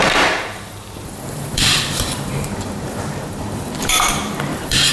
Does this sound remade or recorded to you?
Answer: remade